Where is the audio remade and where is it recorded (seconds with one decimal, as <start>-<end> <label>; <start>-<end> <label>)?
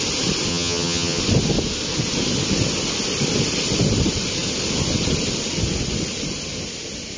0.0-0.5 recorded; 0.5-1.2 remade; 1.2-7.2 recorded